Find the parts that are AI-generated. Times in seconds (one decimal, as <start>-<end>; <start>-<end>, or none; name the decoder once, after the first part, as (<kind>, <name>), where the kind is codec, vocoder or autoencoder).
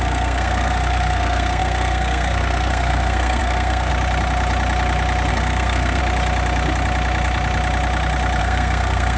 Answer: 0.0-3.9 (codec, SNAC); 5.3-6.0; 8.4-9.2